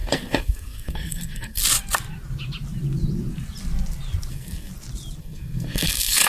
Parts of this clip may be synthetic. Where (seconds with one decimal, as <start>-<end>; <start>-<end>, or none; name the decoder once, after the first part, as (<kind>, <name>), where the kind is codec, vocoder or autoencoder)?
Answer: 0.0-1.6 (codec, SNAC); 4.3-4.7; 5.2-6.3